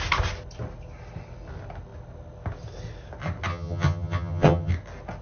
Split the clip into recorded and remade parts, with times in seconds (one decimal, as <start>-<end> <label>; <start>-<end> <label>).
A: 0.0-3.5 recorded; 3.5-4.7 remade; 4.7-5.2 recorded